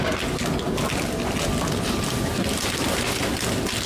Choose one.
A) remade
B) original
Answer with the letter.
B